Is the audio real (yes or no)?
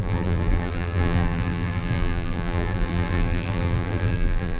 no